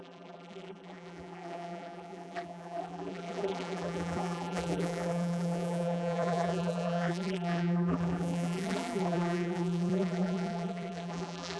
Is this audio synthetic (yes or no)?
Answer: yes